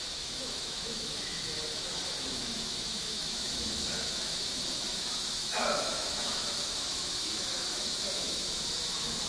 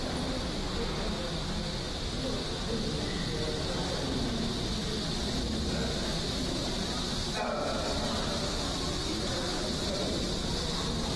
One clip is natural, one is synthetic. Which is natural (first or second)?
second